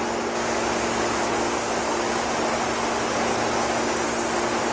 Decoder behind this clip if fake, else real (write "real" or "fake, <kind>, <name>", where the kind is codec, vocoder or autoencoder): real